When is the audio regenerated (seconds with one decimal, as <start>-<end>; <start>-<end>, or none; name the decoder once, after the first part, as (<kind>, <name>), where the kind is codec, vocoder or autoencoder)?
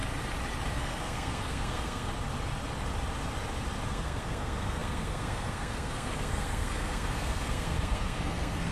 0.7-2.1 (codec, SNAC); 3.9-8.7